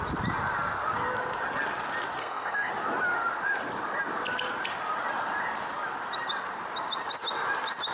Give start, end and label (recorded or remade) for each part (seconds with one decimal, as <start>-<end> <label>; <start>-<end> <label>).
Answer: 0.0-2.2 recorded; 2.2-2.7 remade; 2.7-7.9 recorded